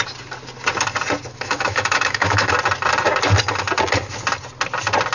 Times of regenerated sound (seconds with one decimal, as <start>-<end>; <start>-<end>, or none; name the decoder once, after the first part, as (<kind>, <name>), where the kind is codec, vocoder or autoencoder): 1.3-2.5 (autoencoder, DAC-VAE)